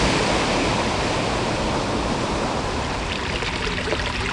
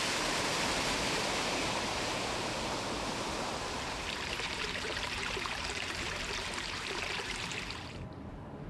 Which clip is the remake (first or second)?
second